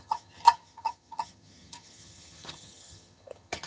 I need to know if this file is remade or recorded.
remade